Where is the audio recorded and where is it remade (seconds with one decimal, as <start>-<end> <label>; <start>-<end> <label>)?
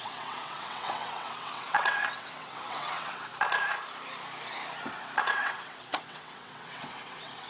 0.0-3.3 remade; 3.3-5.2 recorded; 5.2-7.5 remade